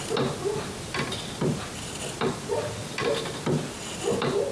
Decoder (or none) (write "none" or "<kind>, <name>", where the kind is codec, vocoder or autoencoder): none